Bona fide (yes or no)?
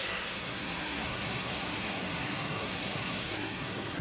no